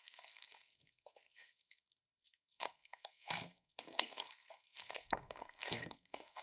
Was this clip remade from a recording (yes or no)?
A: yes